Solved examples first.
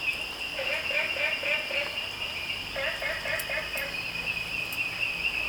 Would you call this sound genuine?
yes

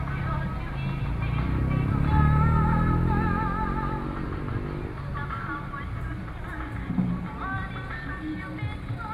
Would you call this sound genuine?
yes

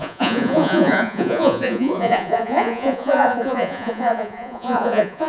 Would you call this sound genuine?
no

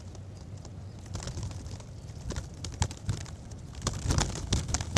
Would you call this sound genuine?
yes